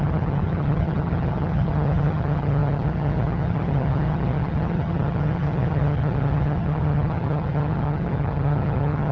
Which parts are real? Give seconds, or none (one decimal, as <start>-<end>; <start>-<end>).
none